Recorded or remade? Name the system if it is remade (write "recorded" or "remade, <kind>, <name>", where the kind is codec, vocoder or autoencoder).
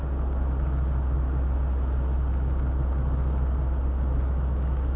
recorded